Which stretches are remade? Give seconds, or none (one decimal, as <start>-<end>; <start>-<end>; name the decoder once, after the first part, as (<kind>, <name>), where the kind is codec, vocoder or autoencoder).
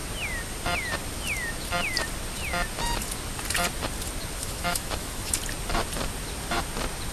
4.4-5.4 (autoencoder, DAC-VAE)